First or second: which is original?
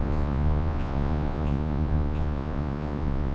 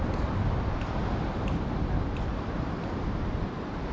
second